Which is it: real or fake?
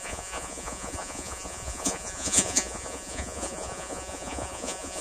fake